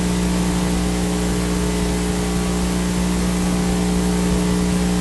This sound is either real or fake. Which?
real